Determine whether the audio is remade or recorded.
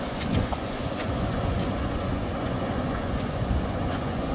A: remade